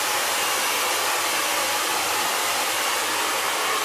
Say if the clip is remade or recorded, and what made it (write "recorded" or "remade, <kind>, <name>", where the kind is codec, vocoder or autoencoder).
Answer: recorded